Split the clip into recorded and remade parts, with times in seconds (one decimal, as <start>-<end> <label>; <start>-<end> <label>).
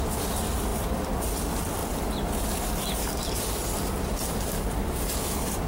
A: 0.0-0.7 recorded; 0.7-1.4 remade; 1.4-1.8 recorded; 1.8-5.2 remade; 5.2-5.7 recorded